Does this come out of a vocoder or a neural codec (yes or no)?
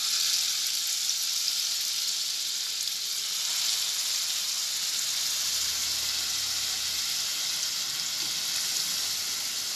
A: no